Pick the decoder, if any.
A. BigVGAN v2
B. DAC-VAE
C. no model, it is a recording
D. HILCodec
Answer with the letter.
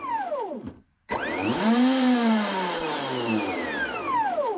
A